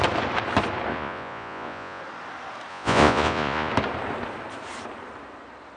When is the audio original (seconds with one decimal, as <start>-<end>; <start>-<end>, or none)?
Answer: 0.0-0.9; 2.0-2.7; 3.7-5.8